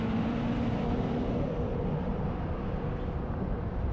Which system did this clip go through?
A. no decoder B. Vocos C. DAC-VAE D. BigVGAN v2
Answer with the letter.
D